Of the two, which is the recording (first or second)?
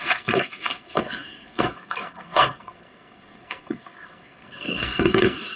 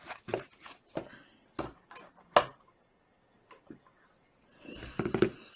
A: second